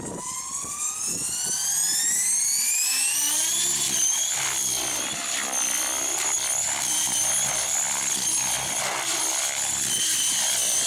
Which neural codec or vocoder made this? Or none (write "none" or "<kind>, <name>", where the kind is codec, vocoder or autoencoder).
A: none